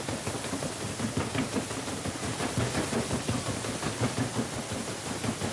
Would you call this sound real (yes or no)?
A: yes